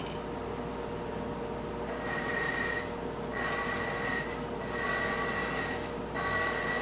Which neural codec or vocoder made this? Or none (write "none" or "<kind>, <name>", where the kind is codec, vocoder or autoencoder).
none